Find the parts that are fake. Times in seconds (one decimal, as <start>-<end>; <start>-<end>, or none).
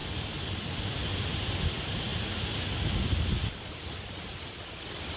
none